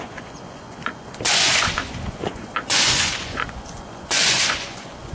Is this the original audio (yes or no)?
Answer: no